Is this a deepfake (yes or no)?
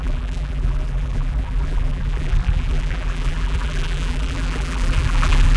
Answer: yes